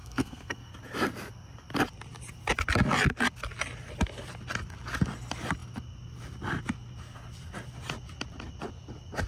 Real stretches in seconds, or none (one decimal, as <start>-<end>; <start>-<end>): 0.7-9.3